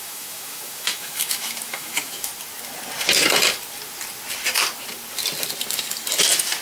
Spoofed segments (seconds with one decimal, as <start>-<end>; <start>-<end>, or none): 0.0-2.3